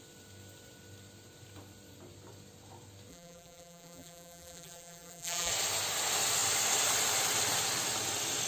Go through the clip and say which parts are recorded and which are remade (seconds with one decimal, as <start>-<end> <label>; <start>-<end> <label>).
0.0-3.1 recorded; 3.1-5.5 remade; 5.5-8.5 recorded

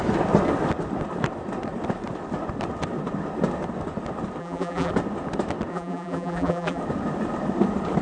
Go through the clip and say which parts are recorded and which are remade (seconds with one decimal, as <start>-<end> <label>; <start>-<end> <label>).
0.0-4.4 recorded; 4.4-4.9 remade; 4.9-5.7 recorded; 5.7-6.8 remade; 6.8-8.0 recorded

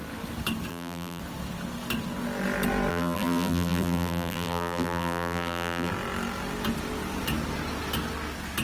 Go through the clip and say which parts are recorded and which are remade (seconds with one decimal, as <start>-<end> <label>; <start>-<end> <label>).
0.0-0.7 recorded; 0.7-1.2 remade; 1.2-2.9 recorded; 2.9-5.9 remade; 5.9-8.6 recorded